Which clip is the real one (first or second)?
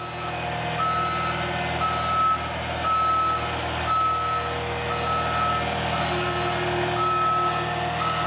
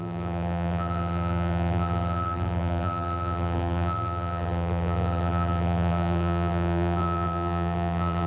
first